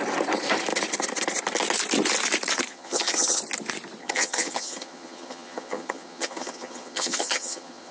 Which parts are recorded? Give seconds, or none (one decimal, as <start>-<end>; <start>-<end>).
0.0-2.7; 3.4-4.0